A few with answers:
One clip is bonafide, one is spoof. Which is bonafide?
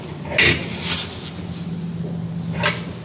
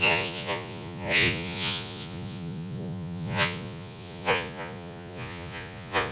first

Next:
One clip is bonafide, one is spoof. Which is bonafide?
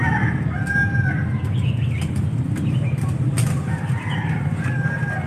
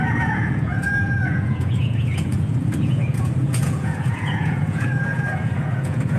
first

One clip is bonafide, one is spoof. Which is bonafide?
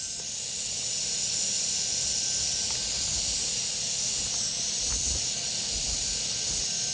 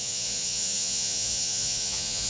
first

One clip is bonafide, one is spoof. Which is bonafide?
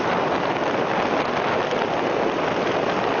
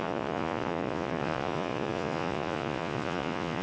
first